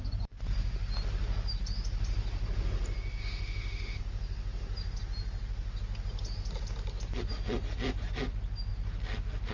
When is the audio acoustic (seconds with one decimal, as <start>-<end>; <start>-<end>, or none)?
0.0-3.2; 4.0-9.5